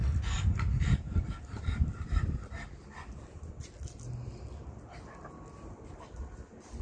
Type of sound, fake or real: real